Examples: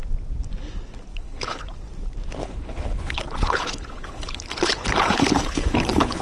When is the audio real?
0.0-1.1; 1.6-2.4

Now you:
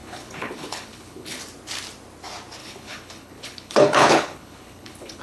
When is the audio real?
1.4-2.6

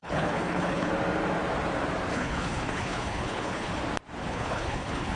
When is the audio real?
0.9-2.1; 3.8-4.2

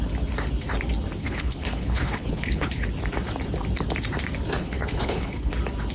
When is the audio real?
0.0-1.2; 2.8-4.6; 5.5-5.9